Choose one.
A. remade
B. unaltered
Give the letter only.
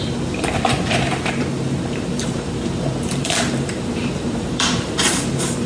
A